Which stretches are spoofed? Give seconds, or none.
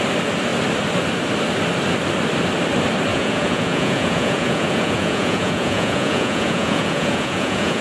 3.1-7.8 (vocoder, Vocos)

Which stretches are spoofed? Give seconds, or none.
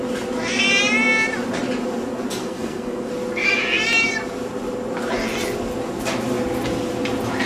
2.4-3.1 (codec, SNAC)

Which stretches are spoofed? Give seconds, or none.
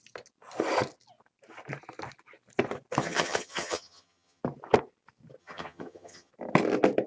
3.0-4.4 (vocoder, HiFi-GAN); 5.4-6.3